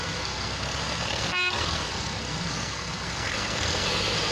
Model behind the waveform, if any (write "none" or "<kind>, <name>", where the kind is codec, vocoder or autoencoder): codec, SNAC